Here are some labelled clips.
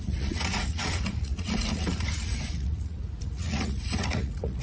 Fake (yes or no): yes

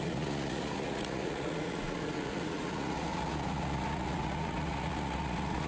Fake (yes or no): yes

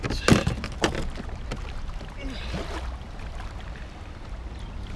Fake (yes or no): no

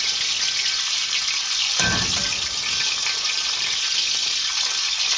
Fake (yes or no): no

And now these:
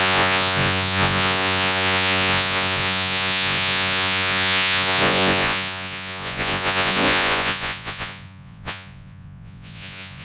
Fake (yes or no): yes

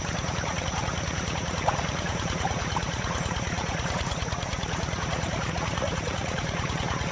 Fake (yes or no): yes